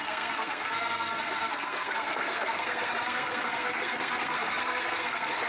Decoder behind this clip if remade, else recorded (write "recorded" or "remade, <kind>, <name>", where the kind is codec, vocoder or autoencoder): remade, codec, SNAC